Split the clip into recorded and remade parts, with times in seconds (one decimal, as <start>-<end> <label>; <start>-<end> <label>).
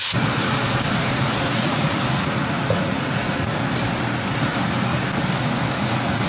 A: 0.0-3.6 remade; 3.6-5.7 recorded; 5.7-6.3 remade